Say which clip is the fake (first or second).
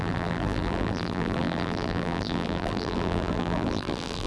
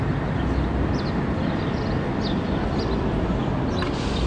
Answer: first